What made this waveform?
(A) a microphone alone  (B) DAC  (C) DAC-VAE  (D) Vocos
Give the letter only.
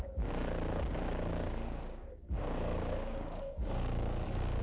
B